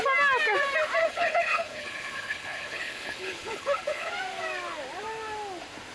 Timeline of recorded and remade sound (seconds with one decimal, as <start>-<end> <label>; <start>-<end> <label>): 0.0-1.0 recorded; 1.0-4.1 remade; 4.1-5.9 recorded